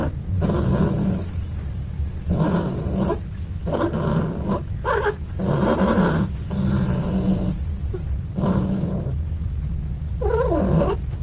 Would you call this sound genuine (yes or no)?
yes